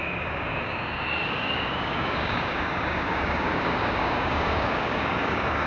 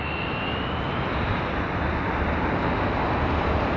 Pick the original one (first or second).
second